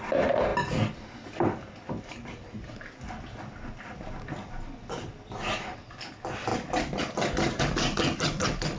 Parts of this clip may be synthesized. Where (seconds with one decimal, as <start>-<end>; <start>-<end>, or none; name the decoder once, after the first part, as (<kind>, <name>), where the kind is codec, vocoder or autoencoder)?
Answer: none